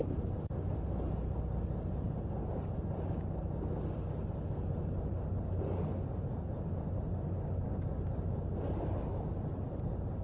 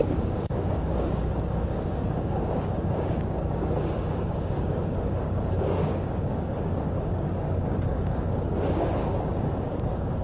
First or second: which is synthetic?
second